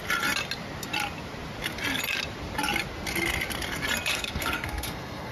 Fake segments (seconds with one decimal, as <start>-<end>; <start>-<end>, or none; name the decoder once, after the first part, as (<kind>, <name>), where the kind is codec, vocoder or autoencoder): 4.1-5.3 (codec, SNAC)